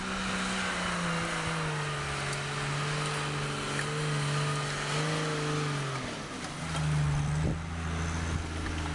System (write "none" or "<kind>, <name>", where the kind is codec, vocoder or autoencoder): none